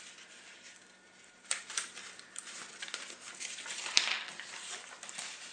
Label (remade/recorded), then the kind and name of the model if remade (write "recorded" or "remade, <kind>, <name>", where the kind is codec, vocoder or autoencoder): recorded